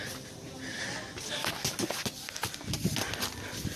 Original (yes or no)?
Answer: yes